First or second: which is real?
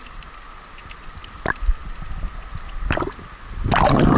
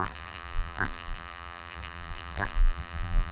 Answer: first